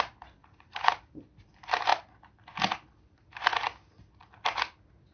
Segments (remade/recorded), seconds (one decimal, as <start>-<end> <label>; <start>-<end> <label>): 0.0-0.4 recorded; 0.4-0.9 remade; 0.9-5.1 recorded